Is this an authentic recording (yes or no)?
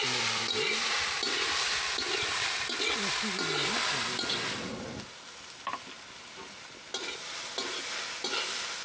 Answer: yes